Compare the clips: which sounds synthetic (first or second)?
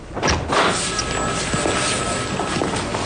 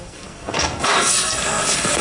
second